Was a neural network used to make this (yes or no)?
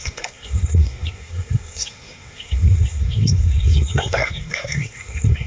yes